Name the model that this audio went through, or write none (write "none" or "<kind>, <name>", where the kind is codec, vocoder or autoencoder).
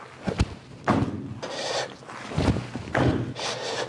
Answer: none